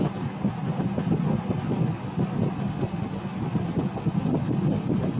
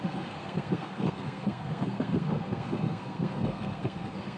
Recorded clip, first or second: first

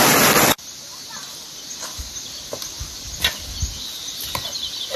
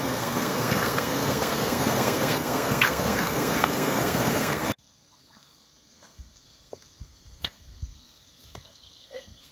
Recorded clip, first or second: first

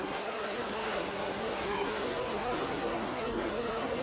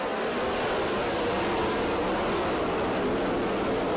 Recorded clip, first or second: second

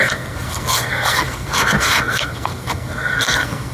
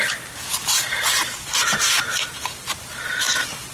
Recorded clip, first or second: second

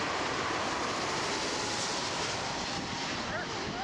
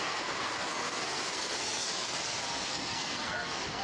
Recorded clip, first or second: first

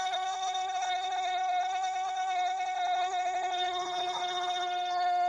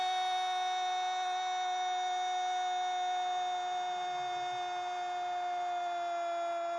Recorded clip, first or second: second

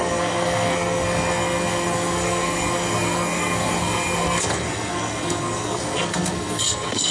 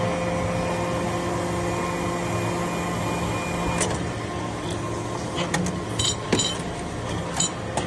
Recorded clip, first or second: second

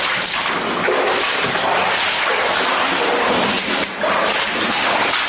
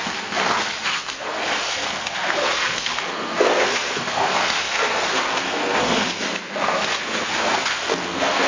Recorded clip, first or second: first